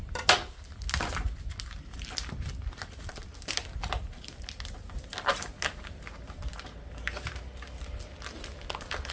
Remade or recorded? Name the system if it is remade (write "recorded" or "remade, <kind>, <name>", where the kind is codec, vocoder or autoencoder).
recorded